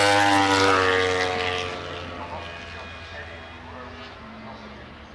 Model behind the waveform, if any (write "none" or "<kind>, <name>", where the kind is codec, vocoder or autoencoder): none